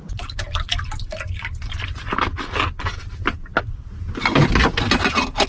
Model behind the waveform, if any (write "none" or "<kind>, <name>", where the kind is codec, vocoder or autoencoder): none